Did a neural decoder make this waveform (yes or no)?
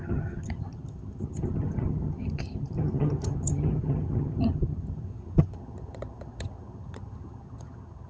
yes